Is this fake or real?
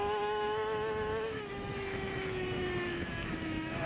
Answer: fake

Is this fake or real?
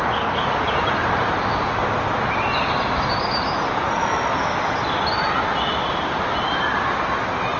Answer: real